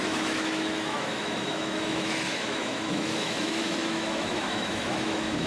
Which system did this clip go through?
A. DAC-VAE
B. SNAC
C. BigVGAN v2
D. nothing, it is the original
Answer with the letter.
A